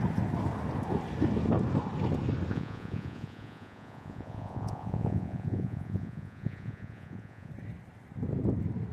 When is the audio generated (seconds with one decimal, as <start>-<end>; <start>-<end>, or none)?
2.5-7.5